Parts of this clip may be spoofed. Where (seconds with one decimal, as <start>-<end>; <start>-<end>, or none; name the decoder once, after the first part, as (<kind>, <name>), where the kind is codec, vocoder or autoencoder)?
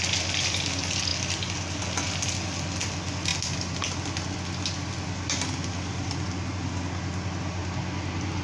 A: none